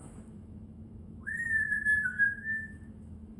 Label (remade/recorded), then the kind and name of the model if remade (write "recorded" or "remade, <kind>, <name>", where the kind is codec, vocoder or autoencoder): remade, autoencoder, DAC-VAE